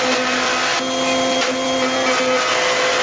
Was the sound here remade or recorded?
recorded